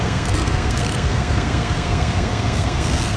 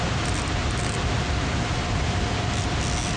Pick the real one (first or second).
second